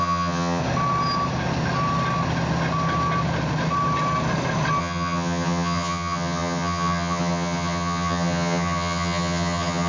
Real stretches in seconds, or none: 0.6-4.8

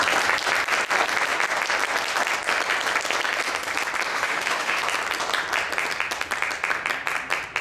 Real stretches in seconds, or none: 0.0-4.1; 4.8-7.6